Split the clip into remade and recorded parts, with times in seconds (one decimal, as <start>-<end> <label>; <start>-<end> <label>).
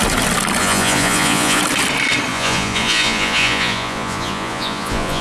0.0-0.6 recorded; 0.6-1.6 remade; 1.6-2.3 recorded; 2.3-5.2 remade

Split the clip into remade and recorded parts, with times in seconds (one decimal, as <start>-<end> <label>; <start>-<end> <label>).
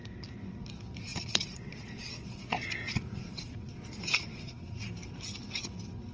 0.0-1.1 recorded; 1.1-4.8 remade; 4.8-6.1 recorded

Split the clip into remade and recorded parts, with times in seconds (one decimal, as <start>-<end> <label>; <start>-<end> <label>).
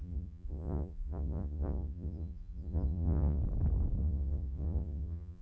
0.0-3.4 remade; 3.4-4.0 recorded; 4.0-5.4 remade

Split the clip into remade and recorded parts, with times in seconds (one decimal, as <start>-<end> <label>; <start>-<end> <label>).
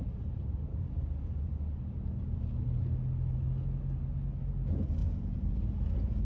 0.0-5.0 recorded; 5.0-6.2 remade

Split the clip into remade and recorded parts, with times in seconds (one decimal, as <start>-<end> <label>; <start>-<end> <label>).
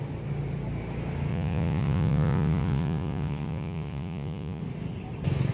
0.0-1.3 recorded; 1.3-4.6 remade; 4.6-5.5 recorded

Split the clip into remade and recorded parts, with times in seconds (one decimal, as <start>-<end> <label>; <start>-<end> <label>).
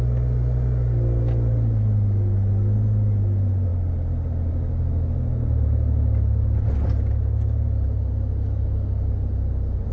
0.0-9.9 recorded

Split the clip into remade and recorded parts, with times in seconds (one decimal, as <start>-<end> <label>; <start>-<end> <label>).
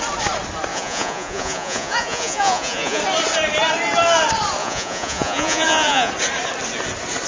0.0-0.7 recorded; 0.7-3.0 remade; 3.0-4.6 recorded; 4.6-6.1 remade; 6.1-7.3 recorded